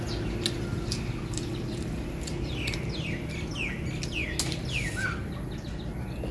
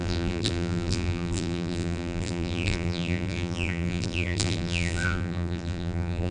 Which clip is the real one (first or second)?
first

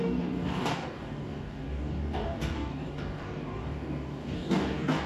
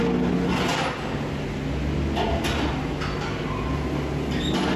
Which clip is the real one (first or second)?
second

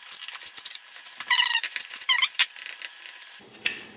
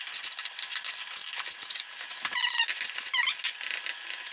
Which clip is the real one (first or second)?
second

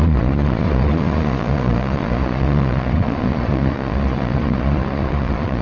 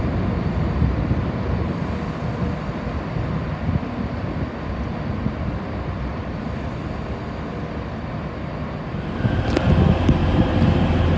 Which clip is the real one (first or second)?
second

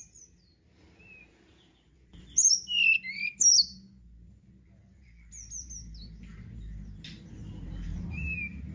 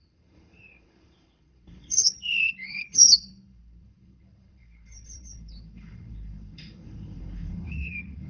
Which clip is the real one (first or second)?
first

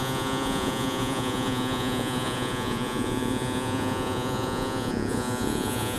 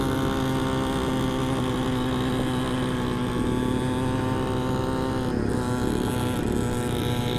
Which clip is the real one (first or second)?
second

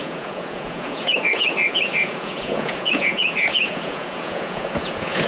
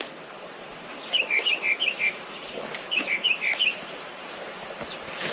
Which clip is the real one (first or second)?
second